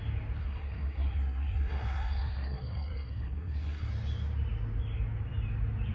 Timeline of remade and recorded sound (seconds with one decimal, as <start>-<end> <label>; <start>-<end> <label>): 0.0-0.4 recorded; 0.4-3.9 remade; 3.9-5.9 recorded

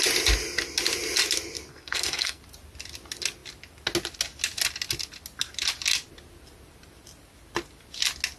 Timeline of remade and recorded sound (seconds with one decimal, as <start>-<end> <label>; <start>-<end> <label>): 0.0-1.7 recorded; 1.7-2.4 remade; 2.4-8.4 recorded

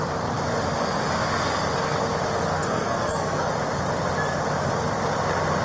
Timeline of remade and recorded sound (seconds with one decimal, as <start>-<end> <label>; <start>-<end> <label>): 0.0-2.5 recorded; 2.5-3.5 remade; 3.5-5.6 recorded

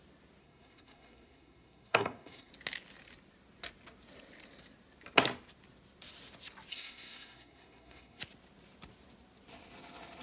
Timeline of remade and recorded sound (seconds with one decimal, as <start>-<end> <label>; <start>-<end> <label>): 0.0-0.4 recorded; 0.4-2.5 remade; 2.5-6.7 recorded; 6.7-8.2 remade; 8.2-10.2 recorded

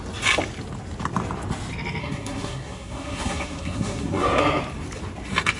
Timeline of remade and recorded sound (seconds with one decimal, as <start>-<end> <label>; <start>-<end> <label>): 0.0-2.0 recorded; 2.0-4.4 remade; 4.4-5.6 recorded

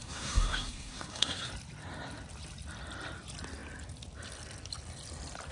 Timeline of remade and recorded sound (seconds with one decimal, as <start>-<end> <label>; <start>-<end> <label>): 0.0-1.5 remade; 1.5-5.5 recorded

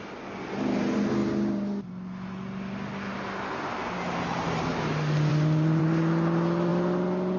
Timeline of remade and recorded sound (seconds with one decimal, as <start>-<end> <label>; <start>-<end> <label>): 0.0-7.4 recorded

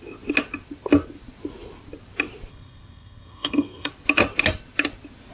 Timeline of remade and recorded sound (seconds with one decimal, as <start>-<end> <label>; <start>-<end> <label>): 0.0-2.5 recorded; 2.5-3.9 remade; 3.9-5.3 recorded